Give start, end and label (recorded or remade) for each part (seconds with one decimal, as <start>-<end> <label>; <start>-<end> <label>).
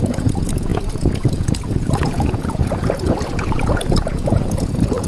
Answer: 0.0-5.1 remade